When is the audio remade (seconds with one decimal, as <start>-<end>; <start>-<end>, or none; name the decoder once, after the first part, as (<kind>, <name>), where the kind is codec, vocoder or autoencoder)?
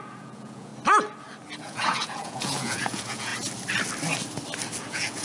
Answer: 0.0-0.7 (vocoder, Vocos); 1.6-3.3; 4.8-5.2